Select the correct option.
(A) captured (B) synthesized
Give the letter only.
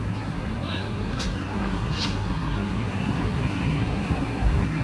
B